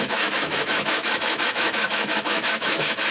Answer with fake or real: fake